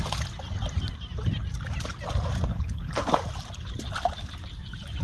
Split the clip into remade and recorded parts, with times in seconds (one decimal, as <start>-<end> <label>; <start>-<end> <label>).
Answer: 0.0-2.5 recorded; 2.5-3.1 remade; 3.1-5.0 recorded